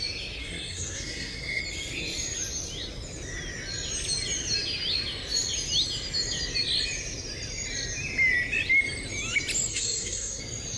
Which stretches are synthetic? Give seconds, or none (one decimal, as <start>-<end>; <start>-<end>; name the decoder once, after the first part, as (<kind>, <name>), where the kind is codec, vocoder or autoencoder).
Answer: 0.4-1.6 (codec, SNAC); 9.7-10.4